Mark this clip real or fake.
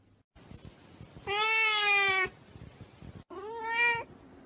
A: real